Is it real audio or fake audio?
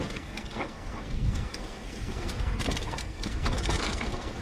fake